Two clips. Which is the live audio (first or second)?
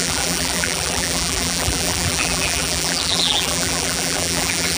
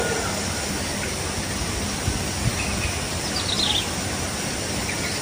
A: second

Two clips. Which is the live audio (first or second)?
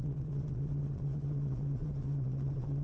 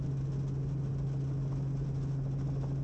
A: second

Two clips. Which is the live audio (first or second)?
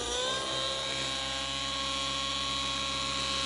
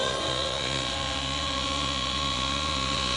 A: first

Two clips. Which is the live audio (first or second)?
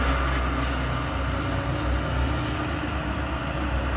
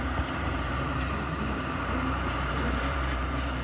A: first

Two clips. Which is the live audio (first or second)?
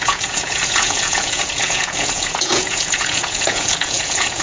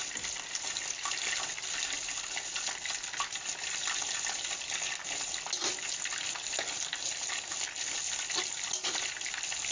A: second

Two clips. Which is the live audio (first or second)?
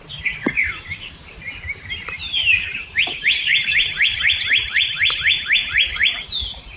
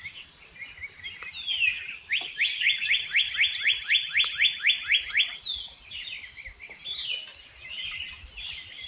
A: second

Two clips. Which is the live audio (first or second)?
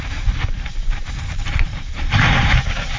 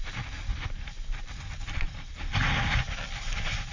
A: second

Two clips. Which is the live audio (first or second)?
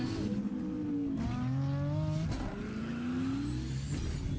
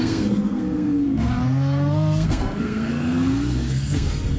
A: first